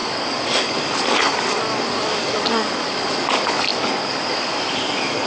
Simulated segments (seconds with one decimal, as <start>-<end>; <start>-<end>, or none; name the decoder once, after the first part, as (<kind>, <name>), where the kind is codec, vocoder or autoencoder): 0.0-5.3 (codec, DAC)